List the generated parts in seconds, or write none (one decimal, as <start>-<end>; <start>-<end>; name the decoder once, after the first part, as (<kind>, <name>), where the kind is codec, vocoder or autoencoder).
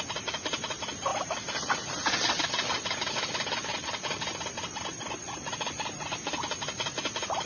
none